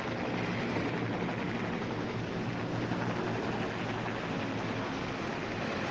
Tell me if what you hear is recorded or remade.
recorded